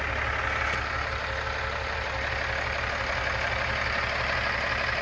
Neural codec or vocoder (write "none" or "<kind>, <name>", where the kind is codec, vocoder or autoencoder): none